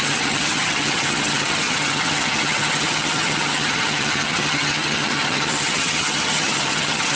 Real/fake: fake